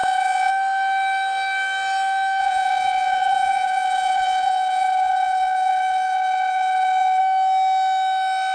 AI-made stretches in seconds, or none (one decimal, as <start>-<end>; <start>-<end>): 0.0-0.5; 2.4-7.2